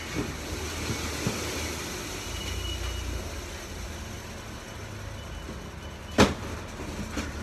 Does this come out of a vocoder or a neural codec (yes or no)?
no